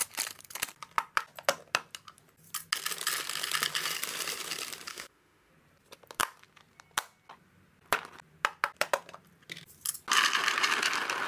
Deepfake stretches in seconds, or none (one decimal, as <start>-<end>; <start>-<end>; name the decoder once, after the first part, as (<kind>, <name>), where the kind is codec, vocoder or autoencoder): 4.9-5.5 (autoencoder, DAC-VAE)